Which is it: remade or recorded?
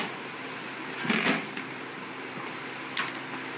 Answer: recorded